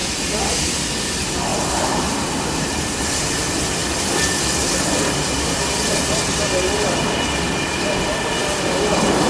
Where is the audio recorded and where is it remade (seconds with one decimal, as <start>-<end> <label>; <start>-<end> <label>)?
0.0-1.5 recorded; 1.5-3.3 remade; 3.3-3.8 recorded; 3.8-5.0 remade; 5.0-8.4 recorded; 8.4-9.3 remade